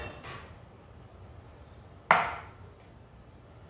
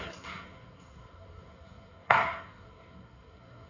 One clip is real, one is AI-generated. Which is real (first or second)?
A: first